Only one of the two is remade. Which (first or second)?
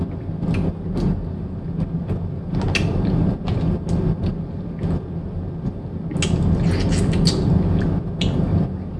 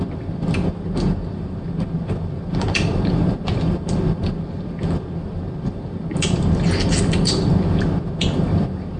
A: second